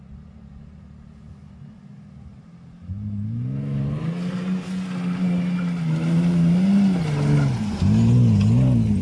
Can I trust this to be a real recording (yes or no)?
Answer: yes